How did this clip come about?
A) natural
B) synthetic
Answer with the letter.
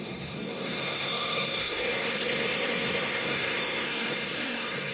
B